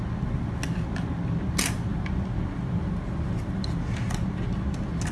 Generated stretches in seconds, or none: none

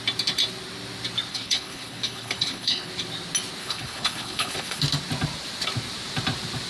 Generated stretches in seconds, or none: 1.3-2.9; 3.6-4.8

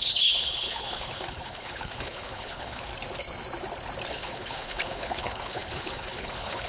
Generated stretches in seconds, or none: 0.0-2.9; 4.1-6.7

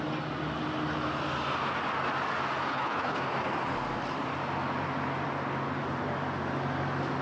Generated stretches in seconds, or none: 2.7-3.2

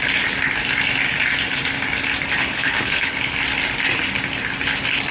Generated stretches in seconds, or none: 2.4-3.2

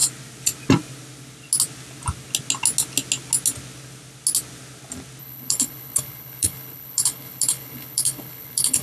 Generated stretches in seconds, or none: 5.2-8.8

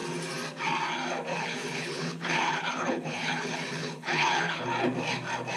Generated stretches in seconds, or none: 1.3-4.7

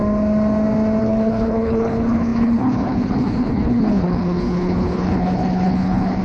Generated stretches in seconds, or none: 1.0-6.2